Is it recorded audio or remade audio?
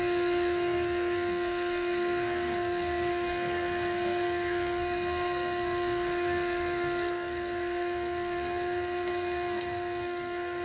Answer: remade